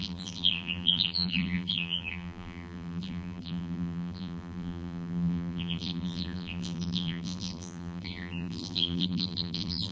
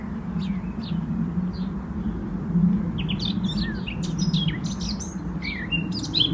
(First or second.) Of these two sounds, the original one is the second